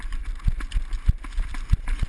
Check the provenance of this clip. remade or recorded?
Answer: recorded